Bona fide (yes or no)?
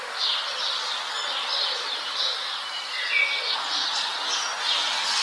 yes